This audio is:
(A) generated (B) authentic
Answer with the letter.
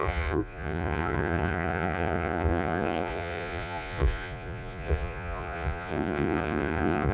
A